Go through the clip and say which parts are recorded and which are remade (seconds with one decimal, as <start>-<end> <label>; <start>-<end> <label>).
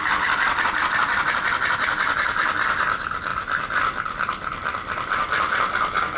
0.0-3.3 remade; 3.3-6.2 recorded